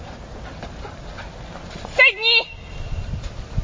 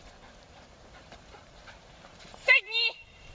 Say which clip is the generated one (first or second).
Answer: second